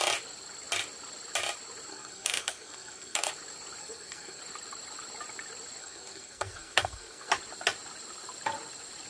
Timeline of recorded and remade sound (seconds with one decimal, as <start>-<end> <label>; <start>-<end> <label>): 0.0-1.9 recorded; 1.9-3.3 remade; 3.3-3.8 recorded; 3.8-4.4 remade; 4.4-5.8 recorded; 5.8-7.3 remade; 7.3-9.1 recorded